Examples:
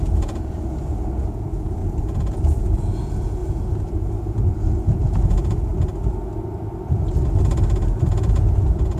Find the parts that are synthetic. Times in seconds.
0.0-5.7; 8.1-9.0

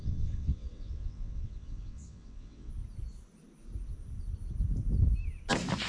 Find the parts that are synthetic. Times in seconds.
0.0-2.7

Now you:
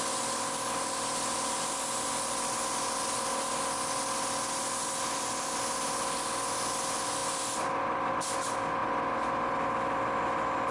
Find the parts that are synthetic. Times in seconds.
none

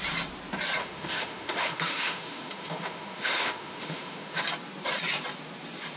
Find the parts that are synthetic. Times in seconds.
0.8-4.4